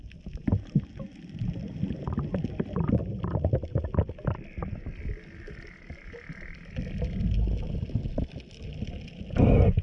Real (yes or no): yes